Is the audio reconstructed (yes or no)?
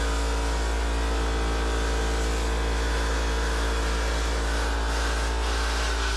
no